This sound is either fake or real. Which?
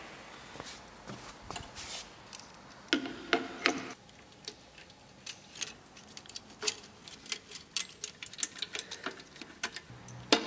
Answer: real